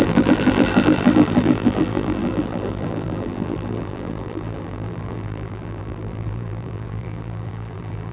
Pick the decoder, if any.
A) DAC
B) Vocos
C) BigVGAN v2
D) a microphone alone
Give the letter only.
C